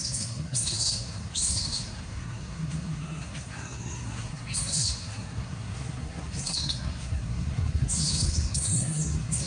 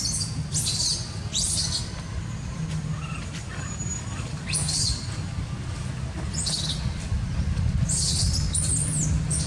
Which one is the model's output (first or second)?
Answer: first